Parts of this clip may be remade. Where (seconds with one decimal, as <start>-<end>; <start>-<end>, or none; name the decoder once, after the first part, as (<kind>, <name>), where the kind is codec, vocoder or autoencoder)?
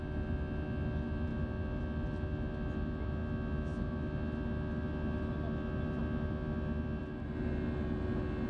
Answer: none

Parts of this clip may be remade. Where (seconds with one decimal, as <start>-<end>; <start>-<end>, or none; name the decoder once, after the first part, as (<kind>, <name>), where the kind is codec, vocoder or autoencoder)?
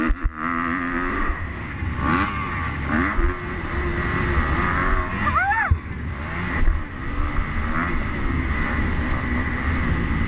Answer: 1.1-1.7 (autoencoder, DAC-VAE)